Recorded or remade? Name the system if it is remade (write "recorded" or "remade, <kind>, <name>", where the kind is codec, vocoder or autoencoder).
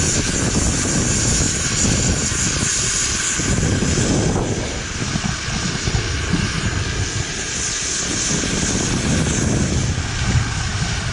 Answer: recorded